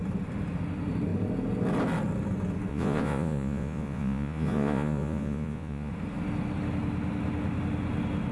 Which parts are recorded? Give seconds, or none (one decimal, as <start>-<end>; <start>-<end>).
0.0-2.7; 5.9-8.3